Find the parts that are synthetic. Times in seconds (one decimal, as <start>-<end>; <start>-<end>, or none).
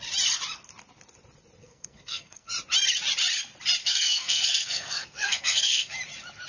1.6-2.5; 3.8-5.9